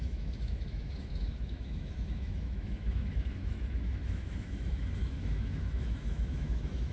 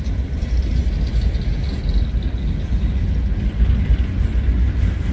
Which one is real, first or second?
second